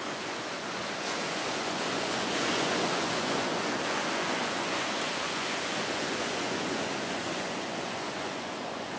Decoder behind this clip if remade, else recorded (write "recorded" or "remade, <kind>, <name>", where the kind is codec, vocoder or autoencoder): remade, vocoder, Vocos